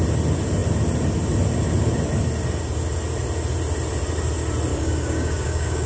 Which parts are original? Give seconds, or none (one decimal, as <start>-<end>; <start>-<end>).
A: 0.0-4.7